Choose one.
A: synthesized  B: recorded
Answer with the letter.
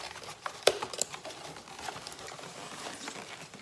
B